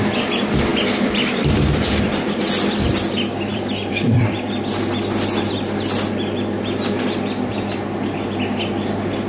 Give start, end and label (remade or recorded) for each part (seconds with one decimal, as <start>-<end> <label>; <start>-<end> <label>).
0.0-0.7 recorded; 0.7-2.4 remade; 2.4-3.5 recorded; 3.5-4.5 remade; 4.5-9.3 recorded